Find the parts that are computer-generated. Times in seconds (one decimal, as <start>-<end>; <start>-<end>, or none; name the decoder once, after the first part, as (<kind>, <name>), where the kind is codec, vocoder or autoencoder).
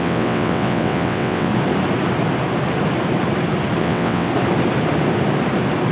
0.0-1.5 (vocoder, WaveNeXt); 3.8-4.3